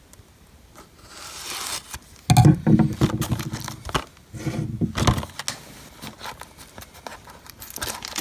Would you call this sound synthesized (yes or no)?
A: no